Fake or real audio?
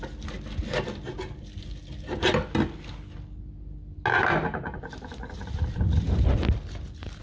real